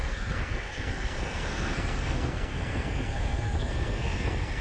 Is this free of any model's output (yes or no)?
no